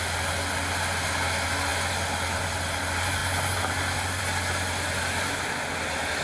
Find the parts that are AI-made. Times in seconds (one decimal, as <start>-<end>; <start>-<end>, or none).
none

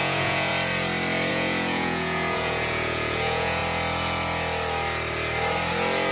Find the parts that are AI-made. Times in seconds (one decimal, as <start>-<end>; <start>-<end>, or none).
0.0-0.5; 1.3-3.6

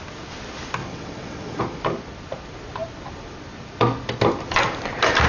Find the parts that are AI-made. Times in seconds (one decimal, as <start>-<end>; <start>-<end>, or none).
0.8-1.6